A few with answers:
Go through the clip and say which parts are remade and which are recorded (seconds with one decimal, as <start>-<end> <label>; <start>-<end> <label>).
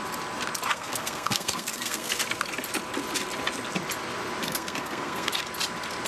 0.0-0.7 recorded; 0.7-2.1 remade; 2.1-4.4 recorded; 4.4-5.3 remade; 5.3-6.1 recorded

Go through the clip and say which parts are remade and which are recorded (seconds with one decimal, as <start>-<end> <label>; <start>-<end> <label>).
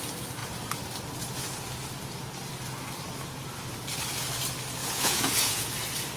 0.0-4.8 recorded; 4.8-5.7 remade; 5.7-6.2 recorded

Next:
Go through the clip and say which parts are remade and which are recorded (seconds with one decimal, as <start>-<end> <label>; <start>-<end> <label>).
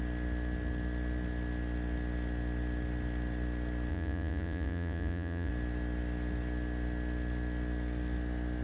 0.0-3.9 recorded; 3.9-5.5 remade; 5.5-8.6 recorded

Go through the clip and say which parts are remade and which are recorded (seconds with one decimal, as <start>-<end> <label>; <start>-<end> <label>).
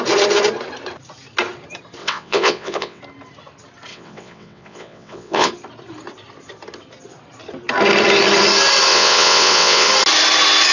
0.0-2.0 recorded; 2.0-3.0 remade; 3.0-3.9 recorded; 3.9-5.5 remade; 5.5-8.9 recorded; 8.9-9.9 remade; 9.9-10.7 recorded